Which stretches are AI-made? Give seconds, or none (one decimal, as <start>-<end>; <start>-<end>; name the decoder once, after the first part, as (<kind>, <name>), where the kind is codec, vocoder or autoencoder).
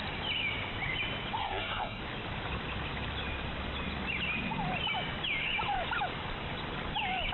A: 1.4-2.0 (codec, SNAC)